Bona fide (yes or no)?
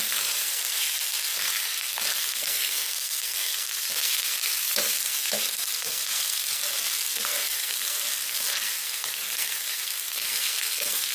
no